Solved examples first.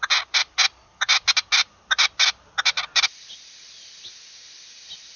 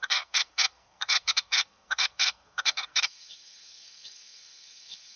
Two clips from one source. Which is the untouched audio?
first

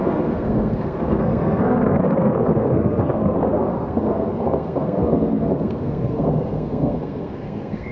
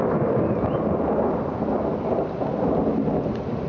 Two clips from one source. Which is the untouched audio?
second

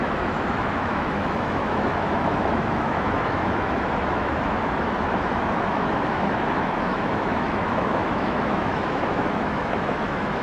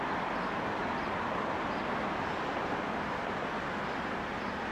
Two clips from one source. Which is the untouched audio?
second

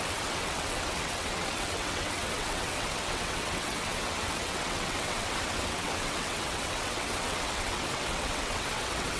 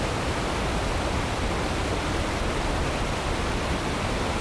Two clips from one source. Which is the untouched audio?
second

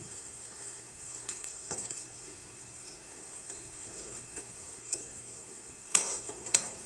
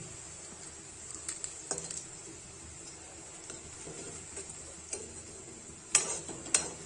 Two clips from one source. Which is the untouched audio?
second